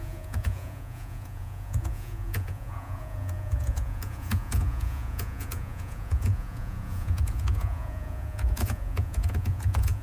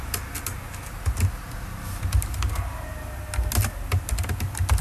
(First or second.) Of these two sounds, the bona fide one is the second